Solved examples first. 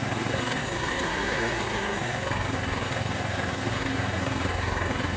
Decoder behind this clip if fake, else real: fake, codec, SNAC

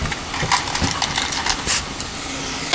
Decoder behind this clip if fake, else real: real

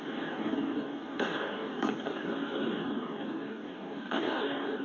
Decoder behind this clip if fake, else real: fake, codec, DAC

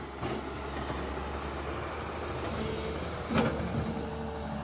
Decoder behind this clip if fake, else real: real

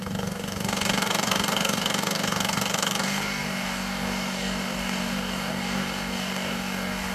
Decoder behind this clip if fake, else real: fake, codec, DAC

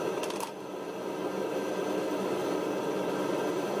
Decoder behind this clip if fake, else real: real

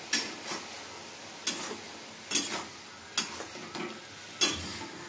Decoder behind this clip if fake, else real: real